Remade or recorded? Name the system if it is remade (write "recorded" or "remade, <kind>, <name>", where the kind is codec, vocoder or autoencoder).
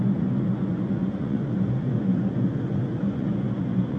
remade, vocoder, Vocos